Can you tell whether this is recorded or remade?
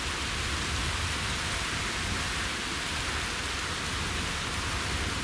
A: recorded